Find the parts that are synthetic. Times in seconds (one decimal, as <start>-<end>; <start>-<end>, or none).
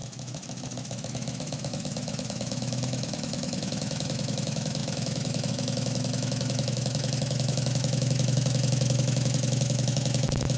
0.0-10.6